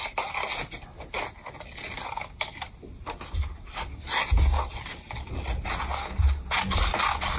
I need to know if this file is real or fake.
real